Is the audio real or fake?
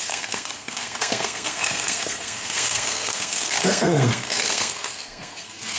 fake